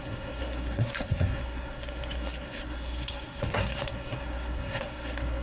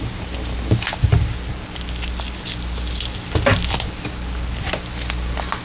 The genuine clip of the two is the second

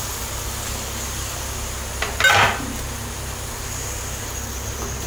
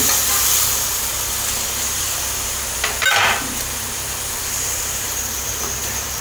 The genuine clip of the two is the first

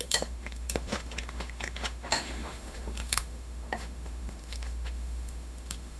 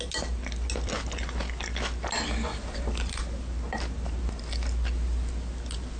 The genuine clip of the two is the second